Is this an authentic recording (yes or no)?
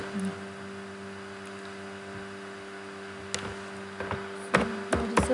yes